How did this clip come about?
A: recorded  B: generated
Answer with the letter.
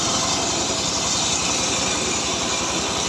A